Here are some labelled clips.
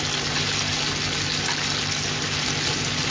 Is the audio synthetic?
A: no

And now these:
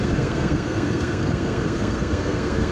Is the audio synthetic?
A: yes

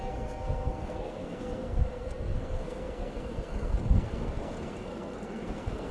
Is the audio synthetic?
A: yes